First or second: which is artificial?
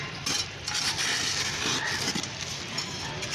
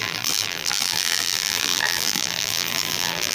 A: second